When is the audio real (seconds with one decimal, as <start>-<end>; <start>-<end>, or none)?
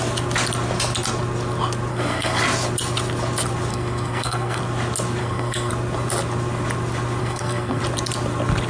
0.0-1.9; 2.4-3.7; 4.6-5.2; 5.7-7.2; 7.8-8.7